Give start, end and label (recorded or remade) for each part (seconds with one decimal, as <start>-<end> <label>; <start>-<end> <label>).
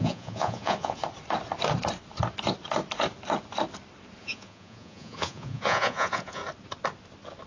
0.0-1.0 remade; 1.0-4.2 recorded; 4.2-6.4 remade; 6.4-7.5 recorded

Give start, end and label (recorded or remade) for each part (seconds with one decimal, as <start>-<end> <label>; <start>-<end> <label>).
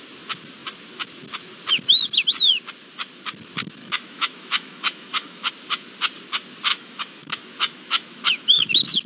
0.0-3.8 recorded; 3.8-5.5 remade; 5.5-6.7 recorded; 6.7-8.7 remade; 8.7-9.1 recorded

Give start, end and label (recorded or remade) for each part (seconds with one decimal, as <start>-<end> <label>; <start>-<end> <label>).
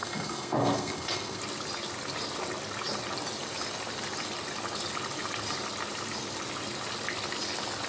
0.0-1.4 remade; 1.4-7.9 recorded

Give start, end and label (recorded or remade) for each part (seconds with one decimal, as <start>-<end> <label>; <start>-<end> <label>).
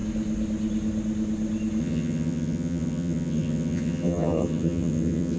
0.0-1.8 recorded; 1.8-5.4 remade